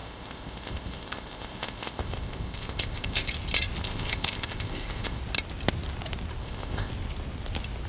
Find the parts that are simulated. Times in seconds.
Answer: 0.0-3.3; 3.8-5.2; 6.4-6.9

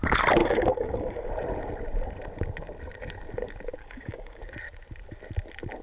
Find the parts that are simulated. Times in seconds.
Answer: 0.4-1.3; 3.8-4.4